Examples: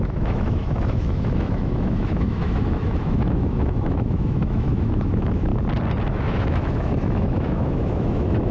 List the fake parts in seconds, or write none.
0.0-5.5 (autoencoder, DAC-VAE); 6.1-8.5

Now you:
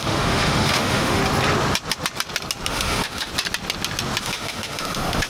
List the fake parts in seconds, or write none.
0.0-1.2 (autoencoder, DAC-VAE); 2.7-3.3; 4.2-5.3

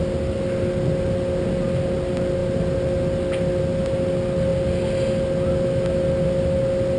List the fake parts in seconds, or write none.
none